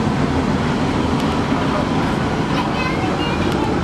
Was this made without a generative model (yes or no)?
yes